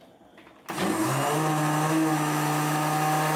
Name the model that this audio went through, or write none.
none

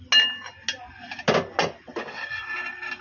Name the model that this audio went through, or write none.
none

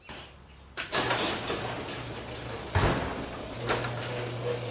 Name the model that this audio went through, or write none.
none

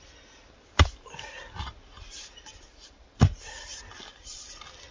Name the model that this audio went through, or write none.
none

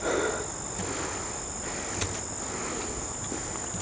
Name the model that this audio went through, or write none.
none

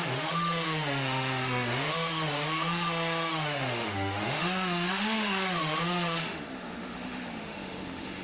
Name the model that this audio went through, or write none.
autoencoder, DAC-VAE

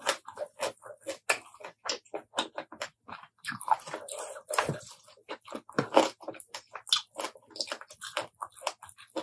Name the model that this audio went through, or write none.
none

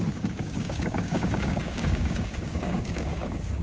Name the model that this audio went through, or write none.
codec, DAC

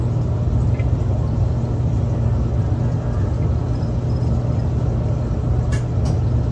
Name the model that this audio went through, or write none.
none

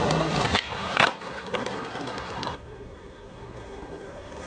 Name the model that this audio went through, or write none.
codec, SNAC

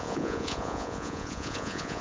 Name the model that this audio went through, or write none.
vocoder, Vocos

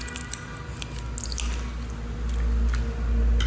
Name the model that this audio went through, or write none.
none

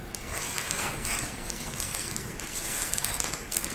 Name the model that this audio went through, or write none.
codec, SNAC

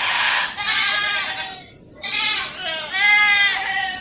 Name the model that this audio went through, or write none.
none